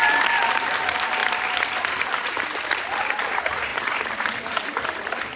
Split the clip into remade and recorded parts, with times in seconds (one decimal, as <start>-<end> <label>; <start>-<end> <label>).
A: 0.0-1.2 recorded; 1.2-2.4 remade; 2.4-3.7 recorded; 3.7-4.2 remade; 4.2-5.4 recorded